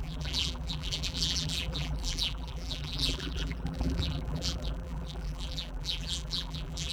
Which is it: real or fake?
fake